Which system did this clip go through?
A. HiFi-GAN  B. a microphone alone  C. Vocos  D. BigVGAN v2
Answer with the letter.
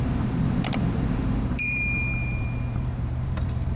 D